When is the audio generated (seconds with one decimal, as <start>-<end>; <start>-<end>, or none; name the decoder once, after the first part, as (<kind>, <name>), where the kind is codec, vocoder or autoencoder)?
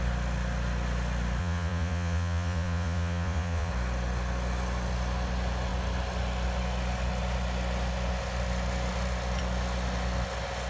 1.4-3.7 (vocoder, Vocos)